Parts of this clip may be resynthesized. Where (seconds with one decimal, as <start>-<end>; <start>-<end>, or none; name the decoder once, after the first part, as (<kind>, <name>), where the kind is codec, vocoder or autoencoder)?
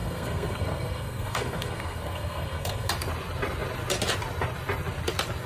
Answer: 0.0-2.9 (codec, SNAC)